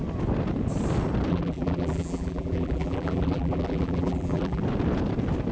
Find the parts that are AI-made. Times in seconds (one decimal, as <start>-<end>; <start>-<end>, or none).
1.3-4.6